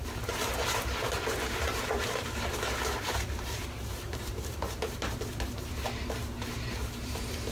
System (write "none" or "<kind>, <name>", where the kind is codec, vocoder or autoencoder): vocoder, BigVGAN v2